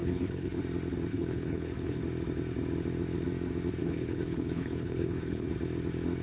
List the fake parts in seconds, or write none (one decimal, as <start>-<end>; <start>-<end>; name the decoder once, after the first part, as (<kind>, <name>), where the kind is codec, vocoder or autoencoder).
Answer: 0.0-0.6 (codec, HILCodec); 1.1-2.0; 3.8-5.5